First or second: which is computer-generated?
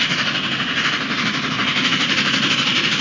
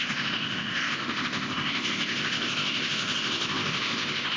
second